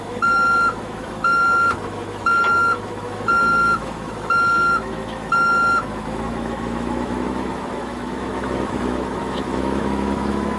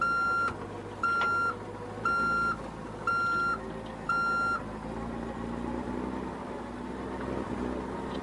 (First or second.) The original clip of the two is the second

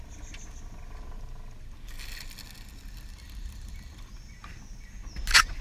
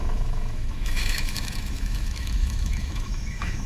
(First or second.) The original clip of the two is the first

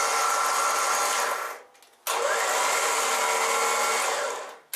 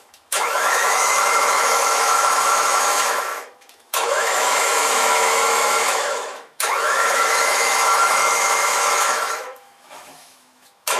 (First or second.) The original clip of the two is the first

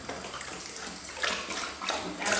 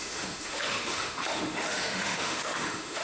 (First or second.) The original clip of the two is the first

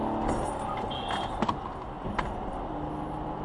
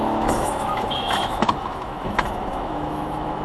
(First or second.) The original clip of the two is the first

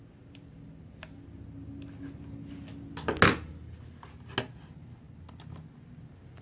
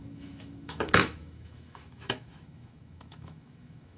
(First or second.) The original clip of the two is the first